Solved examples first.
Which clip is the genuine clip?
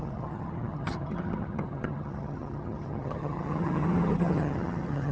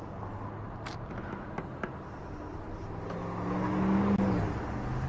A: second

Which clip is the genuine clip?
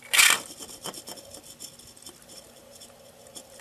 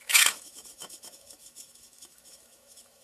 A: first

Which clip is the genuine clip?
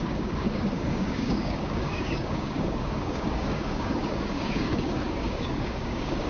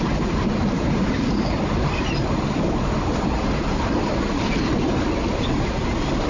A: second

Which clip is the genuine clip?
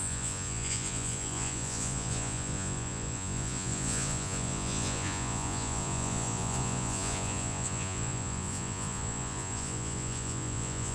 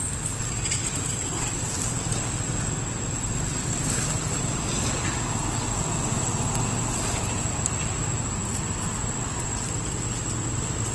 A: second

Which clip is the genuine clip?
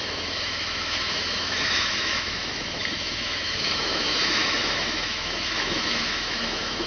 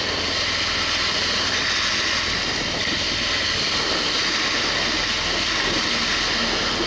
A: second